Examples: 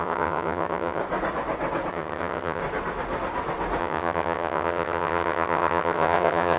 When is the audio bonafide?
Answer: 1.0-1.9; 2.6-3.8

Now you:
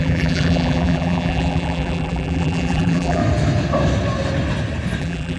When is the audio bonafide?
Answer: 3.2-5.0

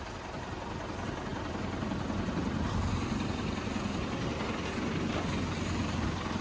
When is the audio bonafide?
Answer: 0.0-6.4

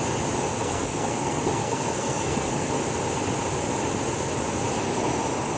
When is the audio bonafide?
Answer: 0.0-0.5; 2.7-5.6